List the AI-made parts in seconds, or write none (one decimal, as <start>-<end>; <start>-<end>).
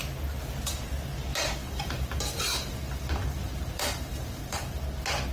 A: 1.6-4.8